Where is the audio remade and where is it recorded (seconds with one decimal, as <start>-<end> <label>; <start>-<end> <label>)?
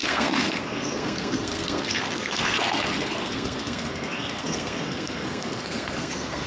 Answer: 0.0-6.5 remade